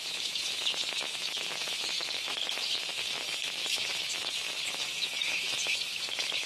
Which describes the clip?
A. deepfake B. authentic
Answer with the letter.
A